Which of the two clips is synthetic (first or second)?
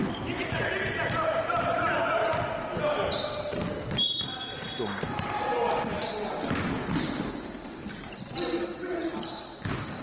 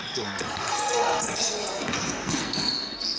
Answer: second